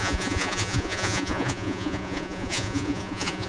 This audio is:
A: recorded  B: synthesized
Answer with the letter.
B